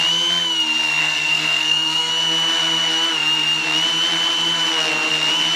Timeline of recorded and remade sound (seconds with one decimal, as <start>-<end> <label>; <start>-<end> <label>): 0.0-1.0 recorded; 1.0-2.1 remade; 2.1-5.6 recorded